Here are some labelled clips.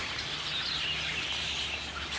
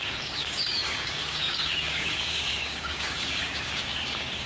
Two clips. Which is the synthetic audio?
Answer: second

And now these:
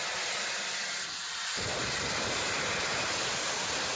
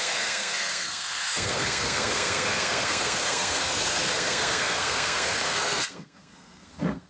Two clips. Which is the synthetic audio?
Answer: second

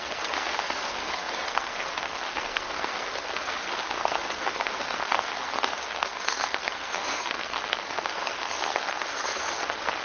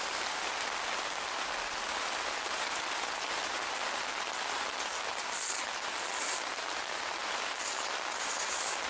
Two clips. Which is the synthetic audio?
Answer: first